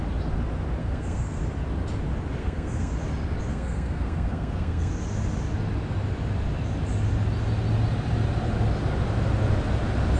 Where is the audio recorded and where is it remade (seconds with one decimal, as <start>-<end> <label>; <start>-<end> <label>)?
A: 0.0-0.8 recorded; 0.8-1.4 remade; 1.4-2.4 recorded; 2.4-2.9 remade; 2.9-3.5 recorded; 3.5-4.9 remade; 4.9-10.2 recorded